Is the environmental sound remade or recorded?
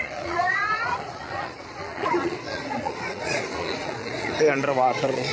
remade